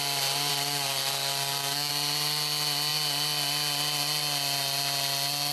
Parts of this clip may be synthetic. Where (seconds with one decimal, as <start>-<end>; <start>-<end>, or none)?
0.5-1.9